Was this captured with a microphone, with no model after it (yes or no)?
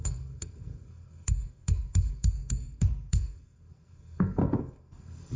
no